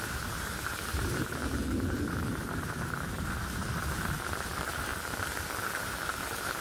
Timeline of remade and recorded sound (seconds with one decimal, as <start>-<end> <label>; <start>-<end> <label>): 0.0-1.4 remade; 1.4-2.1 recorded; 2.1-4.9 remade; 4.9-6.6 recorded